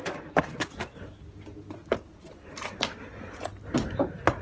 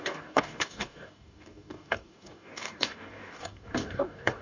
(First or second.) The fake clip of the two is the second